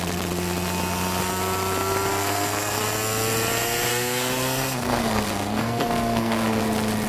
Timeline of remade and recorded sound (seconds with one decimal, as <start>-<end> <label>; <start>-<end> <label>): 0.0-2.1 recorded; 2.1-2.8 remade; 2.8-3.9 recorded; 3.9-6.6 remade; 6.6-7.1 recorded